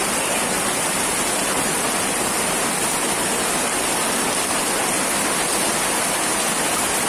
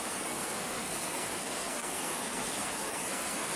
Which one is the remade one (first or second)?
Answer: second